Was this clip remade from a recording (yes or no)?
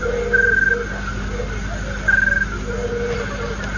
no